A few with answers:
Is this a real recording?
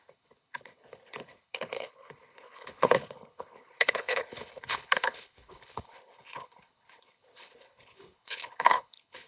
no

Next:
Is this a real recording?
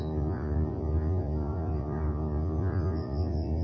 no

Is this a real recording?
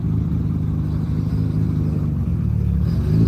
yes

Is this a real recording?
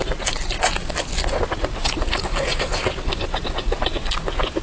yes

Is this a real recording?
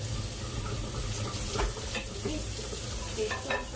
yes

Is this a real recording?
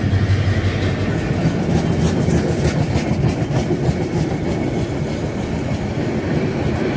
yes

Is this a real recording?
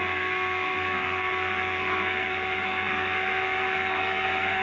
no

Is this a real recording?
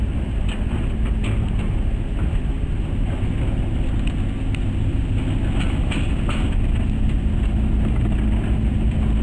yes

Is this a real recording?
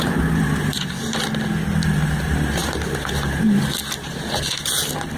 yes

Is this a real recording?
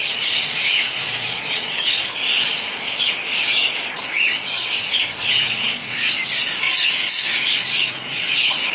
no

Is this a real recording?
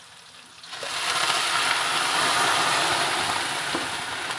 yes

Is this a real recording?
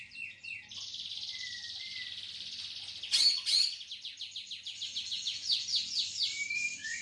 no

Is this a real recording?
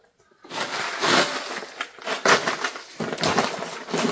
yes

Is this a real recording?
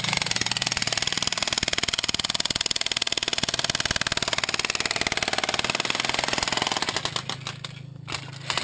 yes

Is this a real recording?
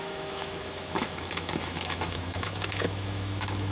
no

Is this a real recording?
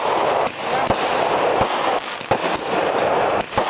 yes